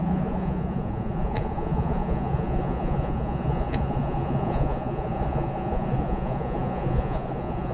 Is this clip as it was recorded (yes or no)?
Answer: no